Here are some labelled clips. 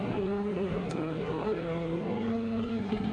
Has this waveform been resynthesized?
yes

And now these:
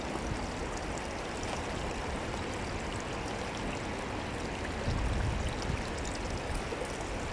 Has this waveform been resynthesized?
no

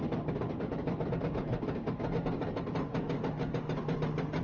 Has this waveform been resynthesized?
no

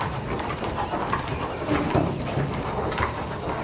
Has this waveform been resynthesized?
no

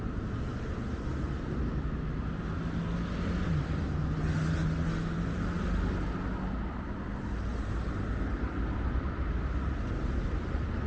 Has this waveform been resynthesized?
no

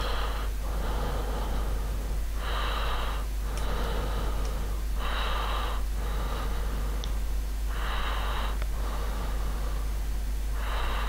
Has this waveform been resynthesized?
no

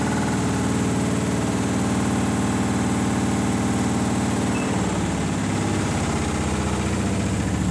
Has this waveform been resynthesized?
no